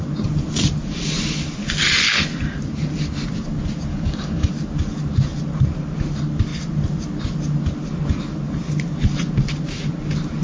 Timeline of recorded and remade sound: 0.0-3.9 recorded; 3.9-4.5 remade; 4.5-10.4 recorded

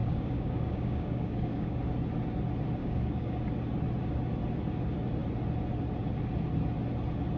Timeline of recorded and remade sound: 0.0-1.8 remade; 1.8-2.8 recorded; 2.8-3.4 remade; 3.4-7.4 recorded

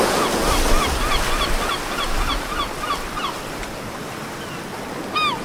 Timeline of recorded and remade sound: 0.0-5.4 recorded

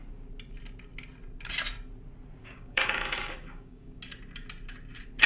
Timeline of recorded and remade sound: 0.0-2.4 recorded; 2.4-4.0 remade; 4.0-5.3 recorded

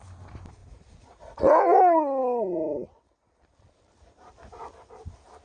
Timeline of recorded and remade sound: 0.0-5.4 recorded